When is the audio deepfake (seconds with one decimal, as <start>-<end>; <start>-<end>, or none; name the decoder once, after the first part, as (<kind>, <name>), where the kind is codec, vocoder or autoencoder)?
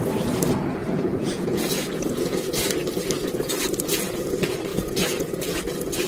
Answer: 0.8-2.5 (vocoder, Vocos); 4.7-5.6